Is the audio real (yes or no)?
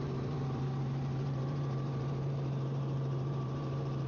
no